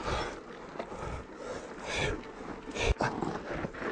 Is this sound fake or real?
real